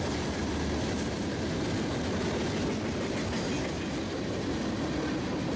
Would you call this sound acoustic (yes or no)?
yes